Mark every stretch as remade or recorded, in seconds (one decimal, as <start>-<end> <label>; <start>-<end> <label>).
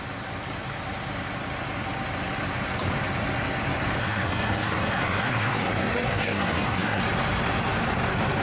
0.0-4.0 recorded; 4.0-7.0 remade; 7.0-8.4 recorded